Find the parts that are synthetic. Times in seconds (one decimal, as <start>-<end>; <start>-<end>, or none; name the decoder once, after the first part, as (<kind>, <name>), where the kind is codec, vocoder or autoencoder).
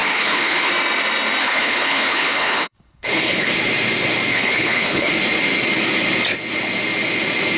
0.0-0.7 (codec, HILCodec); 1.4-3.5; 4.3-5.1